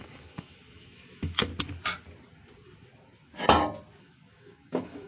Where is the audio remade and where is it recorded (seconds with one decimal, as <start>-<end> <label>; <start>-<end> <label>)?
0.0-1.5 remade; 1.5-4.0 recorded; 4.0-5.1 remade